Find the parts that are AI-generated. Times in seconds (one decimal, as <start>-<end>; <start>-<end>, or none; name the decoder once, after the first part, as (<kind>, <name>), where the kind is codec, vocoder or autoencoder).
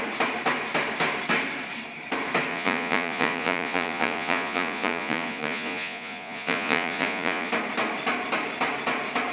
2.5-7.5 (vocoder, Vocos)